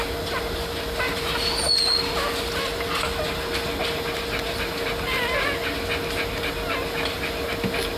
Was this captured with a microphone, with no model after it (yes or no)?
yes